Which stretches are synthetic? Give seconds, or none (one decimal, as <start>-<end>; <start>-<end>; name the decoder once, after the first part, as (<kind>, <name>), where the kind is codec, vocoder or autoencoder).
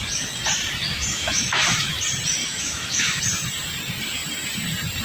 0.9-2.0 (autoencoder, DAC-VAE); 2.4-3.2